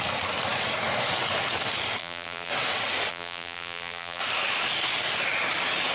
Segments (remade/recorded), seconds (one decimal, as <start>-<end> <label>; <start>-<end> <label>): 0.0-2.0 recorded; 2.0-2.5 remade; 2.5-3.1 recorded; 3.1-4.2 remade; 4.2-5.9 recorded